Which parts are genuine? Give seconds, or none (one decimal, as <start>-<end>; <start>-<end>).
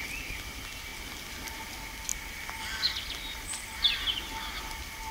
0.0-5.1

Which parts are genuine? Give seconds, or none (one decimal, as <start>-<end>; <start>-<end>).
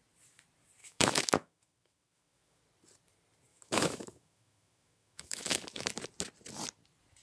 0.0-0.8; 2.6-3.5; 5.9-7.2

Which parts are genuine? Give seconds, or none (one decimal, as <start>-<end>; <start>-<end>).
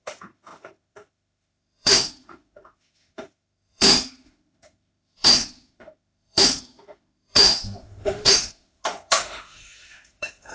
none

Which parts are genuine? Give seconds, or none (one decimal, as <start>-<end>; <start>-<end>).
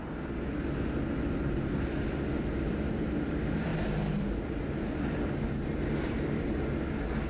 0.0-7.3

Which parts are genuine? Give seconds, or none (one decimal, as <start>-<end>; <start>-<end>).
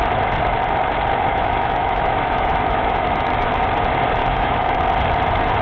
0.0-1.3; 3.5-4.2; 4.8-5.6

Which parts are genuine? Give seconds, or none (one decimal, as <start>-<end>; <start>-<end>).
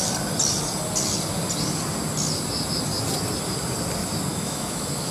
0.0-4.3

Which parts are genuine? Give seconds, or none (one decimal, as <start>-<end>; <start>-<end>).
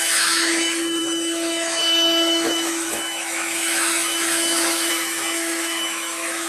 none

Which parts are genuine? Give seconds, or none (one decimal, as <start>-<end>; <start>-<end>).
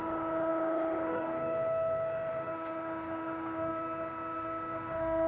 none